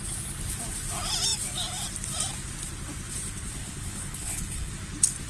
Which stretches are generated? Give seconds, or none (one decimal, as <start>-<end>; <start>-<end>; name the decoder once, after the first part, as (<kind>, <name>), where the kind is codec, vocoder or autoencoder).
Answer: 3.6-4.7 (codec, HILCodec)